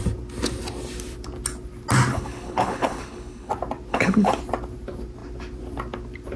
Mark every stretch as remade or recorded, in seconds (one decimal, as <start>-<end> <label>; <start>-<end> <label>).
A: 0.0-2.1 recorded; 2.1-3.5 remade; 3.5-3.9 recorded; 3.9-4.4 remade; 4.4-6.4 recorded